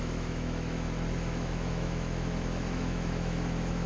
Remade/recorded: remade